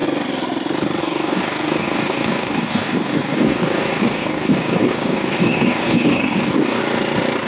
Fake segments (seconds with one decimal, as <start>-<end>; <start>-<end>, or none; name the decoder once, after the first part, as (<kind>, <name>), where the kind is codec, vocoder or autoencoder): 1.0-6.8 (codec, DAC)